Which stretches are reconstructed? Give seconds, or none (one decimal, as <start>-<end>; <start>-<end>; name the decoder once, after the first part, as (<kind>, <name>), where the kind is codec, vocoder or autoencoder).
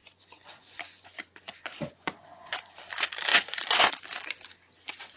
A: 0.0-2.7 (vocoder, Vocos); 3.3-3.9